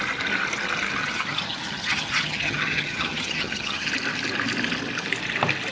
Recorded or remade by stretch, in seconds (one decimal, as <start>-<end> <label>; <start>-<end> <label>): 0.0-1.0 recorded; 1.0-3.9 remade; 3.9-5.7 recorded